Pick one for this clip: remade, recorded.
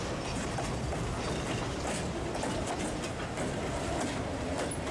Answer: recorded